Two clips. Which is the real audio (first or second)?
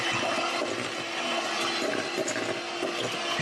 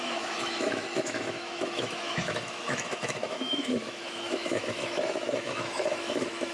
first